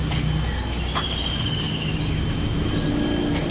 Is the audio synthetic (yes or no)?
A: yes